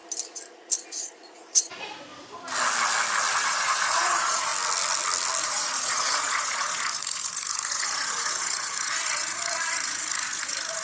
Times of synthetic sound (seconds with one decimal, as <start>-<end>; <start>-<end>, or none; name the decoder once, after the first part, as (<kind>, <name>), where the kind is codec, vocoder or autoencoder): 1.0-2.1 (vocoder, Vocos); 3.4-4.5; 5.4-10.8